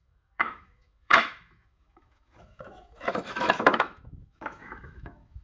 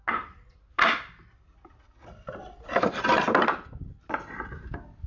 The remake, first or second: first